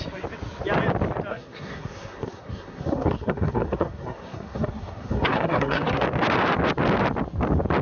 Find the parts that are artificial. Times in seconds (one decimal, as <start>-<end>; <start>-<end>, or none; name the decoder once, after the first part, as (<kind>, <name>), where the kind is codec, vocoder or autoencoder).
1.3-6.0 (codec, SNAC)